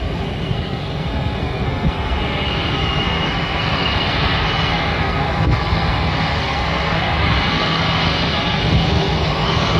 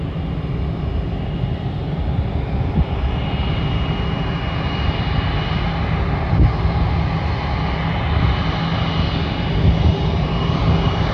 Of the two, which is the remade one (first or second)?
first